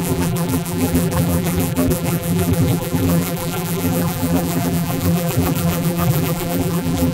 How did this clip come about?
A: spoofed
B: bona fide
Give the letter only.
A